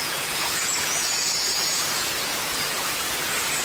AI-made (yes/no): yes